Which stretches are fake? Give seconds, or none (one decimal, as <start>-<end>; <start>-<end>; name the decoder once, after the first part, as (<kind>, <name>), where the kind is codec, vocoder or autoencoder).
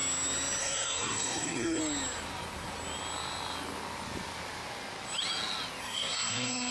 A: 0.6-1.8 (codec, SNAC); 5.8-6.7